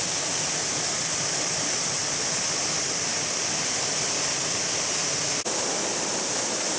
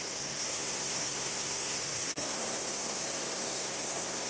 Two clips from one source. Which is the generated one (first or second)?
second